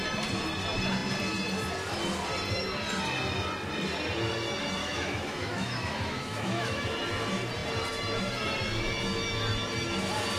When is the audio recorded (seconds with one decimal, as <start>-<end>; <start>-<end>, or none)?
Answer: 0.0-4.8; 6.8-10.4